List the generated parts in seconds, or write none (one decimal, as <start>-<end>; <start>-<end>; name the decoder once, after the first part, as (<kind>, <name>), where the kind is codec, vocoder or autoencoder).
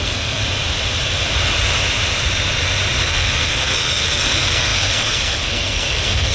0.0-0.4 (codec, SNAC); 3.0-6.3